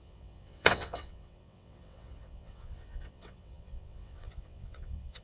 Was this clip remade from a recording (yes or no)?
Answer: yes